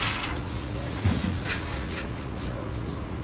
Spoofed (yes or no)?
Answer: yes